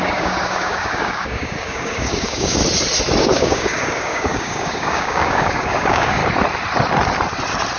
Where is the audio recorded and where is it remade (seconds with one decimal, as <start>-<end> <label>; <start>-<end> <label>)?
0.0-2.6 remade; 2.6-3.2 recorded; 3.2-6.2 remade; 6.2-7.8 recorded